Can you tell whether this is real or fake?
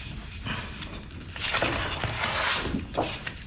real